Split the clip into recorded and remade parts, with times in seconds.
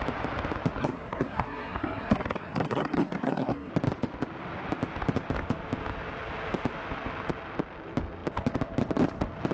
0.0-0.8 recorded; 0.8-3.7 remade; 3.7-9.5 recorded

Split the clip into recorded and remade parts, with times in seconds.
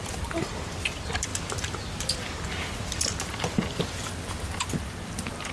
0.0-5.5 recorded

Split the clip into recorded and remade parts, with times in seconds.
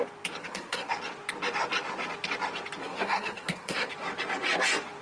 0.0-0.4 recorded; 0.4-0.9 remade; 0.9-2.8 recorded; 2.8-3.9 remade; 3.9-5.0 recorded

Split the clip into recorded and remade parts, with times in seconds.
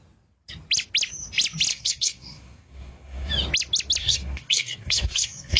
0.0-1.7 recorded; 1.7-3.3 remade; 3.3-4.0 recorded; 4.0-5.6 remade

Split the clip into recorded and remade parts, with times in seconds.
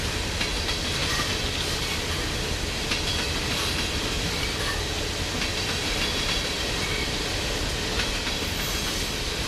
0.0-9.5 recorded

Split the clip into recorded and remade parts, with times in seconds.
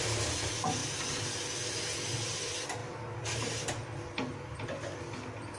0.0-5.6 recorded